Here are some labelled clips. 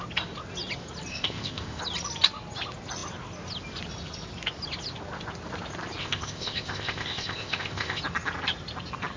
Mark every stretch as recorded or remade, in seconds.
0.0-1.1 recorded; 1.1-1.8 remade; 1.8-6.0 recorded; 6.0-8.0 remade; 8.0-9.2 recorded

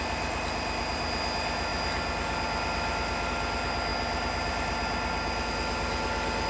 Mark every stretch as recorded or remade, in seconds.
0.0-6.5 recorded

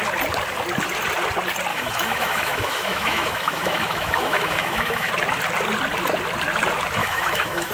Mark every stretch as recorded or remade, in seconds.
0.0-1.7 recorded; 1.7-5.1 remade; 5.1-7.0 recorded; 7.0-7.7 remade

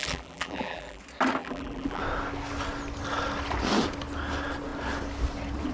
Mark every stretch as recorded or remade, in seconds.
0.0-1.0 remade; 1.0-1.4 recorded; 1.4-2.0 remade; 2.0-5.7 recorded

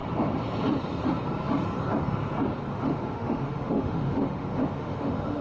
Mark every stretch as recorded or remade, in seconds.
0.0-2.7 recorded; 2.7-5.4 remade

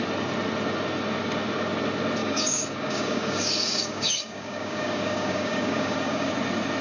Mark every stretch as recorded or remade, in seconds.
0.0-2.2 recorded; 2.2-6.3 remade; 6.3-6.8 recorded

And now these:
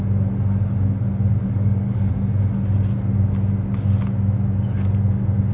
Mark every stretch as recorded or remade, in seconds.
0.0-1.3 recorded; 1.3-2.1 remade; 2.1-5.5 recorded

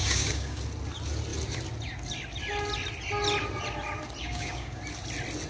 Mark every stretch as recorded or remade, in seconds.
0.0-0.6 remade; 0.6-4.2 recorded; 4.2-4.8 remade; 4.8-5.5 recorded